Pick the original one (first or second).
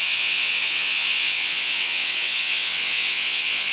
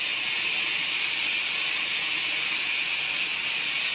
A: second